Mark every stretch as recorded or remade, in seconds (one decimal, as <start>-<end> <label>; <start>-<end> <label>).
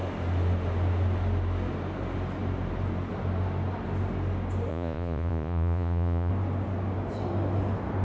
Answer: 0.0-4.7 recorded; 4.7-6.3 remade; 6.3-8.0 recorded